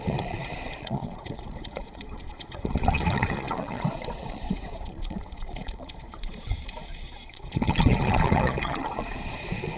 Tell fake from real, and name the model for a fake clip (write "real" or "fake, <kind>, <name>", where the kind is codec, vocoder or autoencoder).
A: fake, vocoder, Vocos